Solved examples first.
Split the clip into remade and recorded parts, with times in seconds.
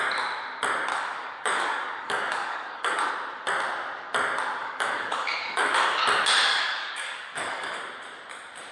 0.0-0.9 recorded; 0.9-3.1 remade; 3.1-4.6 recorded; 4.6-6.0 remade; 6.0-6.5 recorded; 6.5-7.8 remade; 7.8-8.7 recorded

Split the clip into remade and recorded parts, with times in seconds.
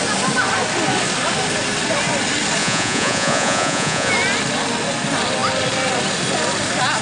0.0-2.6 recorded; 2.6-4.1 remade; 4.1-7.0 recorded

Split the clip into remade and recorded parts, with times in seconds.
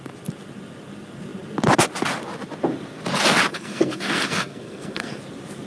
0.0-3.5 recorded; 3.5-5.2 remade; 5.2-5.7 recorded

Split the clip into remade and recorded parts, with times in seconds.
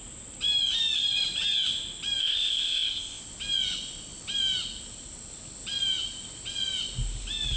0.0-2.2 recorded; 2.2-3.2 remade; 3.2-7.6 recorded